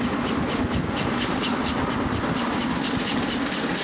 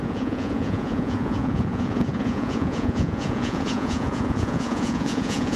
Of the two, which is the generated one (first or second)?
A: second